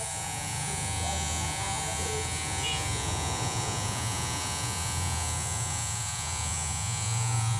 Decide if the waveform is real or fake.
fake